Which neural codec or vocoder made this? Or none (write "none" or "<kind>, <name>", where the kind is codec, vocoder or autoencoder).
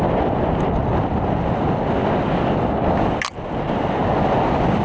none